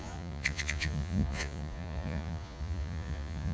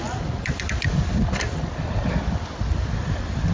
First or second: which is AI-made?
first